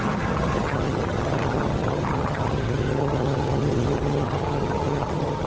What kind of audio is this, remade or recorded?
remade